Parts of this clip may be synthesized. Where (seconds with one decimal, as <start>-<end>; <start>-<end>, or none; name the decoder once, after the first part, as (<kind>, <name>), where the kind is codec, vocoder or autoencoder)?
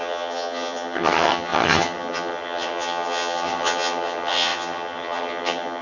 0.0-5.8 (vocoder, HiFi-GAN)